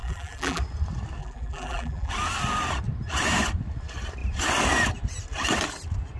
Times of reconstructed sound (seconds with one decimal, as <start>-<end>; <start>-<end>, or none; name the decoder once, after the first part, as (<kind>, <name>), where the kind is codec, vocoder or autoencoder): 0.0-0.6 (vocoder, BigVGAN v2); 1.2-2.1